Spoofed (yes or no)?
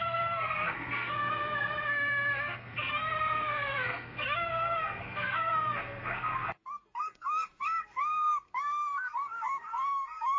yes